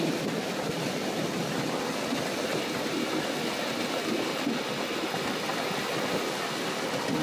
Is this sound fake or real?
real